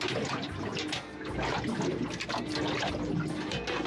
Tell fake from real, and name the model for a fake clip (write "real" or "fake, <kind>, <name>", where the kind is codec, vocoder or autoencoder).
real